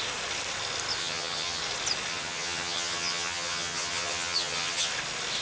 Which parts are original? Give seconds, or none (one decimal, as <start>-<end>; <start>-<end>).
0.0-1.0; 1.6-2.1; 4.9-5.4